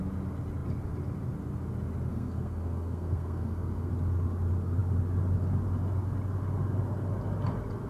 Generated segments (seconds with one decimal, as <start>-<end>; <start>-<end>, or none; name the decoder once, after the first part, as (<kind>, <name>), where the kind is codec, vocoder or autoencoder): 2.1-3.9 (codec, SNAC)